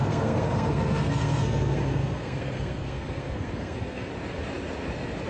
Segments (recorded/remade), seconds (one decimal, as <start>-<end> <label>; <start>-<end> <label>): 0.0-4.1 remade; 4.1-5.3 recorded